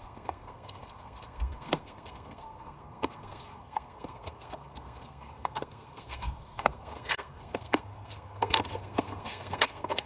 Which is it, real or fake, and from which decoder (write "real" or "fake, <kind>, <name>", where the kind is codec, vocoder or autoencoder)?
fake, codec, SNAC